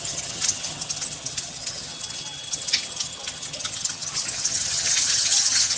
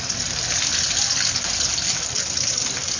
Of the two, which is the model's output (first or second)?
first